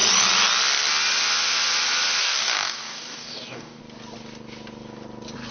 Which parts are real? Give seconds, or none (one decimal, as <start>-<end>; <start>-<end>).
0.0-2.2; 3.8-5.5